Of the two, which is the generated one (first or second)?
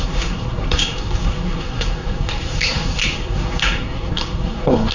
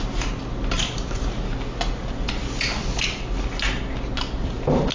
first